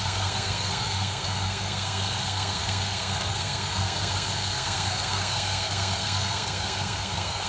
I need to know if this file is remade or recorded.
remade